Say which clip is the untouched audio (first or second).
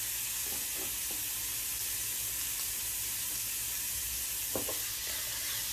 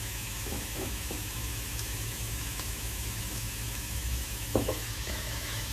first